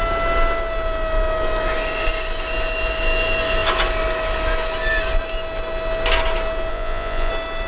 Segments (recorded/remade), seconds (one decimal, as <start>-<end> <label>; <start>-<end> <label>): 0.0-6.7 recorded; 6.7-7.3 remade; 7.3-7.7 recorded